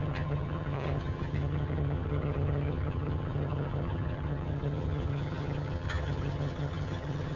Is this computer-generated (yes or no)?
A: yes